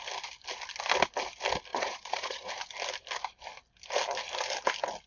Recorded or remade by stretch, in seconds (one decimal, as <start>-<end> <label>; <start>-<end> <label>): 0.0-1.7 recorded; 1.7-2.5 remade; 2.5-5.1 recorded